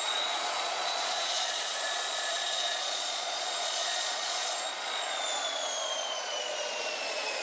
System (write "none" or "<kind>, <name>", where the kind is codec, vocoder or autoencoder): vocoder, Vocos